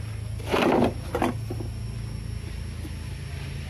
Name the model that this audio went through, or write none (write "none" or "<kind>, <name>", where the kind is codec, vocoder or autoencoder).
none